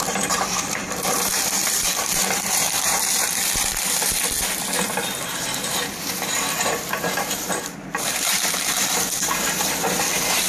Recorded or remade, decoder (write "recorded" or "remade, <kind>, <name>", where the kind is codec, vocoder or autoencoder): remade, vocoder, BigVGAN v2